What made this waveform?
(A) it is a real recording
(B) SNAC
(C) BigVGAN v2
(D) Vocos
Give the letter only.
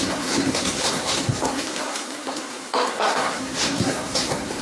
B